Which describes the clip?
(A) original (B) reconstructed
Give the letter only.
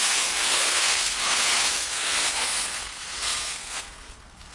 B